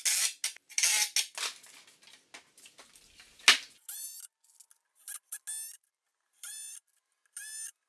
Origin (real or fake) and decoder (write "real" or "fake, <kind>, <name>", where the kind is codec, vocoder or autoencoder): real